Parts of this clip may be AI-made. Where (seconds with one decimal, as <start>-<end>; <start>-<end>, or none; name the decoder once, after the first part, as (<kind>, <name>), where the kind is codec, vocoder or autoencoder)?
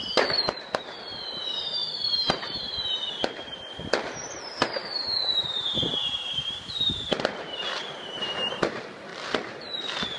0.0-9.1 (vocoder, BigVGAN v2)